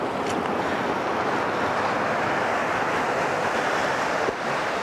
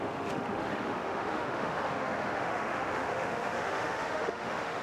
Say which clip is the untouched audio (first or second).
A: first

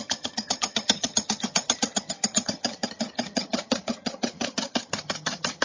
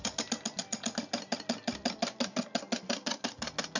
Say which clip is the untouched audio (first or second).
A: second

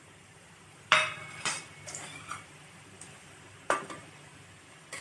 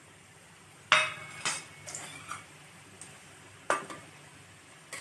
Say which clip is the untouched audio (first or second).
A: second